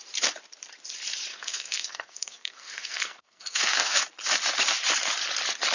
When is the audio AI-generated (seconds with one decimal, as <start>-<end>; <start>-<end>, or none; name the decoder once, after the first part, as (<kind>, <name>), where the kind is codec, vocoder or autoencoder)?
1.3-4.0 (codec, SNAC)